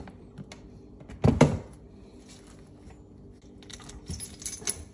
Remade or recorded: recorded